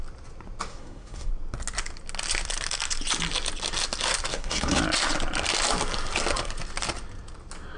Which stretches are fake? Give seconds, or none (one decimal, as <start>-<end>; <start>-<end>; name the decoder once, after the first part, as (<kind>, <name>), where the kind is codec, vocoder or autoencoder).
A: 0.7-1.3 (codec, SNAC); 4.3-4.8